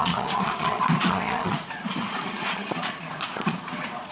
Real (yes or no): no